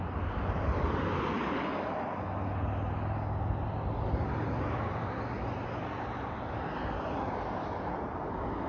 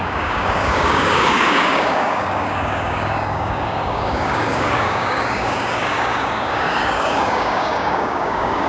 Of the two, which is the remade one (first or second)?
second